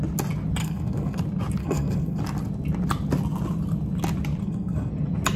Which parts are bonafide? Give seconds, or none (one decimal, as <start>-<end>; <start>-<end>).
0.0-0.6; 1.2-1.6; 2.2-4.4; 4.9-5.4